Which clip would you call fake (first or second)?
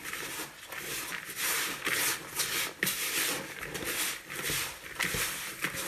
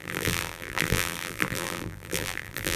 second